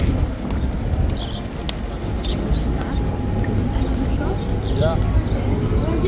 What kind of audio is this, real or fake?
real